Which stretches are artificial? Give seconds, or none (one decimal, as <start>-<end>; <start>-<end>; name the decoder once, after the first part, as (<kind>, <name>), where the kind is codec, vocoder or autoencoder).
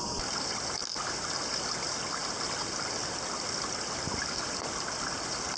none